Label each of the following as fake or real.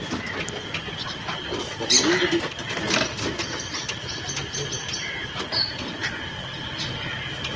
real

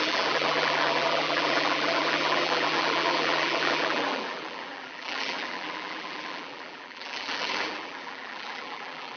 fake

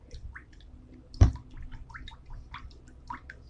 real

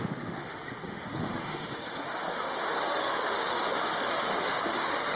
fake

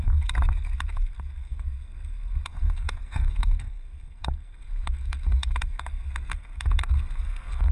fake